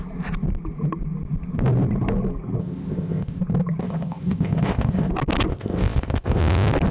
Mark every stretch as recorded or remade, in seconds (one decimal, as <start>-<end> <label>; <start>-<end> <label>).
0.0-2.6 recorded; 2.6-3.4 remade; 3.4-3.8 recorded; 3.8-5.1 remade; 5.1-5.5 recorded; 5.5-6.4 remade; 6.4-6.9 recorded